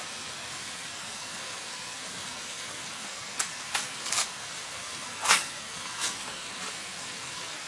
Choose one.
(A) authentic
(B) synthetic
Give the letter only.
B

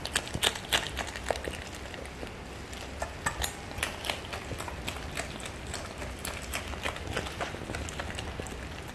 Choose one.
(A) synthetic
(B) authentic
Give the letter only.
B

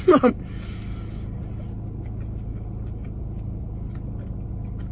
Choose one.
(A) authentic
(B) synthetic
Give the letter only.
A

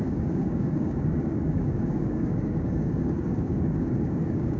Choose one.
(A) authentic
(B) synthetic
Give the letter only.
B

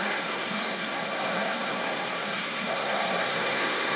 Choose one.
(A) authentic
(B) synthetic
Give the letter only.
B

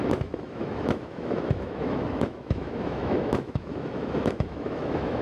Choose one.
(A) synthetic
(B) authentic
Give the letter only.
A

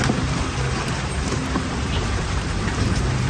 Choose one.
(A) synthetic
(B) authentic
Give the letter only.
A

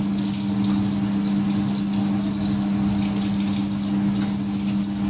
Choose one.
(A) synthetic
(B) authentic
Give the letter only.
B